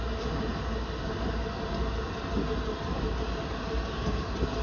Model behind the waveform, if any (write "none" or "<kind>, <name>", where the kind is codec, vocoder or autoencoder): none